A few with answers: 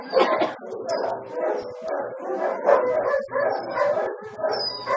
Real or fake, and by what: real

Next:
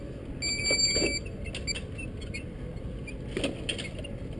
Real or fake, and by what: real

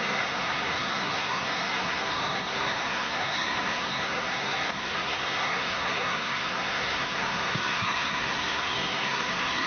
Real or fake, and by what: fake, codec, SNAC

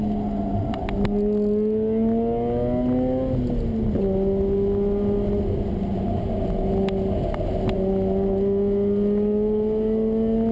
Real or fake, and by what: real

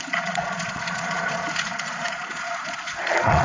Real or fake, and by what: fake, vocoder, Vocos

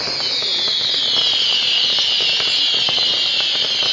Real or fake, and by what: real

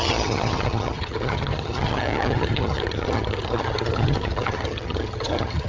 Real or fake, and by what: fake, vocoder, HiFi-GAN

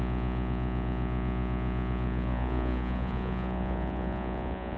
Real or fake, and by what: fake, vocoder, Vocos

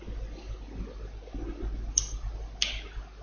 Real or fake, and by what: real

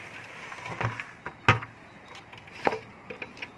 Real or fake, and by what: real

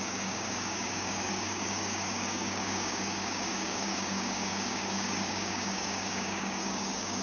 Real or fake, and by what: fake, codec, DAC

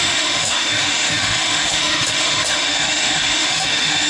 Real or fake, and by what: fake, autoencoder, DAC-VAE